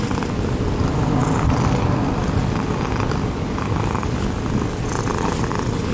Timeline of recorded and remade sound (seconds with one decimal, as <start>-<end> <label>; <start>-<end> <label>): 0.0-5.9 recorded